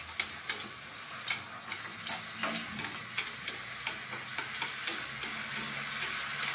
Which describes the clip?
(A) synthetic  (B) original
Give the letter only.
B